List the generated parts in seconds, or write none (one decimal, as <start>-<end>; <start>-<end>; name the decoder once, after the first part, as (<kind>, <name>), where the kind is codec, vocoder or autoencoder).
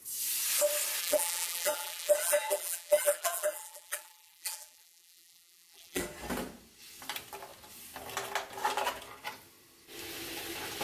1.0-6.0 (vocoder, BigVGAN v2)